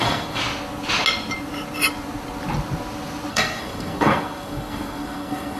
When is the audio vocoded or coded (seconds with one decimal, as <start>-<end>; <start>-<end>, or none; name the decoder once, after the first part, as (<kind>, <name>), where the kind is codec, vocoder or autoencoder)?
0.0-0.4 (codec, SNAC); 3.3-5.6